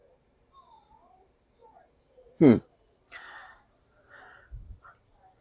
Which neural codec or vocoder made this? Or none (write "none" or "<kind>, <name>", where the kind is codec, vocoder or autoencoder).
none